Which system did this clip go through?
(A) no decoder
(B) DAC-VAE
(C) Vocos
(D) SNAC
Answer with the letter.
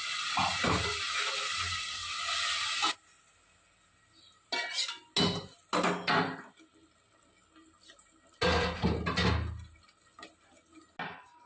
A